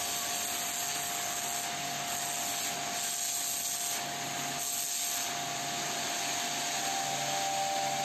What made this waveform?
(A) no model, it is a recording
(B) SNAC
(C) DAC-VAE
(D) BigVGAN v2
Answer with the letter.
A